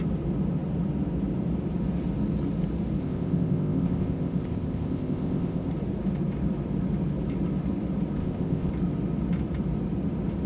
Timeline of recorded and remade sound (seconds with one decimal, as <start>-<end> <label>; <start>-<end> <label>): 0.0-3.0 recorded; 3.0-5.7 remade; 5.7-8.2 recorded; 8.2-8.7 remade; 8.7-10.5 recorded